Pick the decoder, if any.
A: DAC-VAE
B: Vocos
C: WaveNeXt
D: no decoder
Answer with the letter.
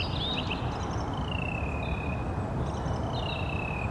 D